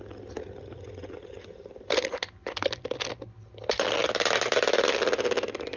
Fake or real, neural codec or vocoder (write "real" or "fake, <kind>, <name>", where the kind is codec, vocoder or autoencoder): real